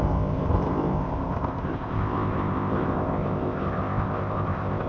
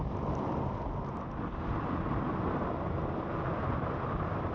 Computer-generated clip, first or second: first